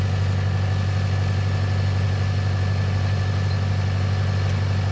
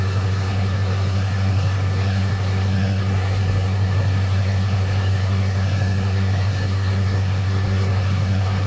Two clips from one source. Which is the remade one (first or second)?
second